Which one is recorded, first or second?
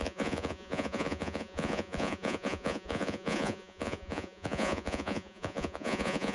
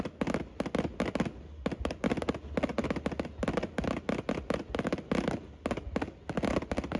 second